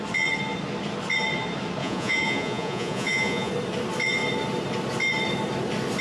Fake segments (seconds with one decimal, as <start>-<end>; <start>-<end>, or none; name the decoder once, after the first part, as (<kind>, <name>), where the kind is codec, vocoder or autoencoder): 1.8-3.5 (vocoder, Vocos)